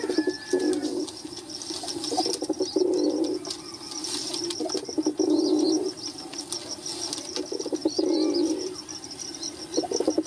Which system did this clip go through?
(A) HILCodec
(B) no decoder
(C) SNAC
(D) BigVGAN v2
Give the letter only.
B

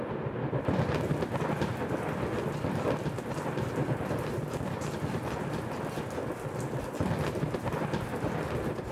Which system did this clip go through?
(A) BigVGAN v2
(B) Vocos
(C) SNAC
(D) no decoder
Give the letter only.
D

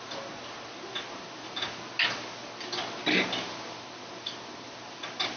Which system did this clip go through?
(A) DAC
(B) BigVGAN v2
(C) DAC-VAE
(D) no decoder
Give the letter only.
D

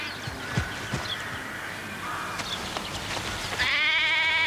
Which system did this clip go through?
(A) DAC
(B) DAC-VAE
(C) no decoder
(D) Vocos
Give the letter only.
C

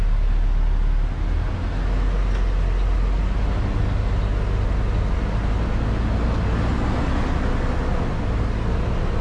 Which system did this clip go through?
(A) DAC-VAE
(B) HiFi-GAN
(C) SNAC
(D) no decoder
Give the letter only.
D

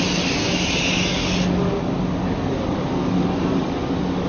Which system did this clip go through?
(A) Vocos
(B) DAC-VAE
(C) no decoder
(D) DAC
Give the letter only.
C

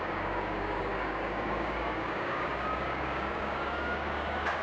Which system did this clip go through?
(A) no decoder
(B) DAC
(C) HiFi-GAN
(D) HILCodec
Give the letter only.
B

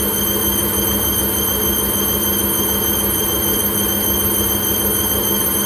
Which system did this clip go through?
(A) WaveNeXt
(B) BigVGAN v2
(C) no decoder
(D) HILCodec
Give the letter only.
C